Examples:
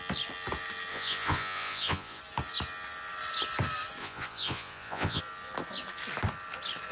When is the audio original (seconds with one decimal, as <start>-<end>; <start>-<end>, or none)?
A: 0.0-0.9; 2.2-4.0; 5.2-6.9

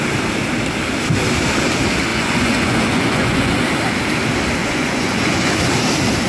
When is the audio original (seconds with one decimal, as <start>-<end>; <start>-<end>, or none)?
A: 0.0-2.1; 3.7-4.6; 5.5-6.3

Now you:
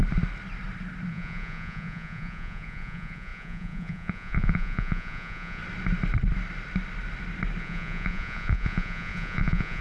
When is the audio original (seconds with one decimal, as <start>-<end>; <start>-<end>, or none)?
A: 0.0-1.1; 5.6-7.6

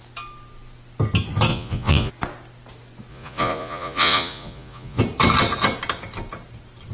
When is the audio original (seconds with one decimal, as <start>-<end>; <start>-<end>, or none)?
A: 0.0-1.5; 2.1-3.1; 5.0-6.9

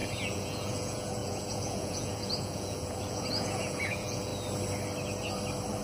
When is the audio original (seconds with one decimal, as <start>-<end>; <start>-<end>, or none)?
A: 4.3-5.8